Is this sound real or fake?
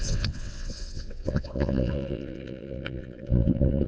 fake